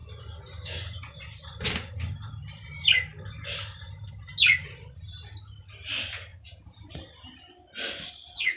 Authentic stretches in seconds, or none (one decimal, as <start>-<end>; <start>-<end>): 1.2-6.3; 6.9-8.6